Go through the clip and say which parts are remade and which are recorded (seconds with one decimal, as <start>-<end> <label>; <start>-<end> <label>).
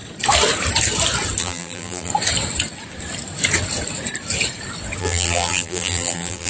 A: 0.0-1.4 recorded; 1.4-2.1 remade; 2.1-5.0 recorded; 5.0-6.5 remade